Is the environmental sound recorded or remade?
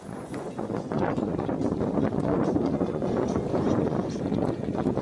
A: remade